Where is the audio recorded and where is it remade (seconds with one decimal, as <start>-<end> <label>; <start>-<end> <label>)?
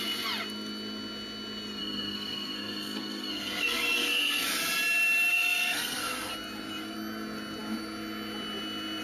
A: 0.0-1.8 recorded; 1.8-4.6 remade; 4.6-5.3 recorded; 5.3-6.3 remade; 6.3-9.0 recorded